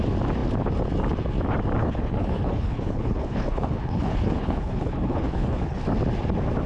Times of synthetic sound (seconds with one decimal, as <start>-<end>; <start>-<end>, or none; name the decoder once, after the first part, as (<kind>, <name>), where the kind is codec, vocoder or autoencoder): 1.8-5.8 (codec, HILCodec)